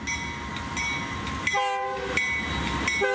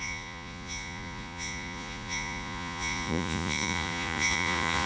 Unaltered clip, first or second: first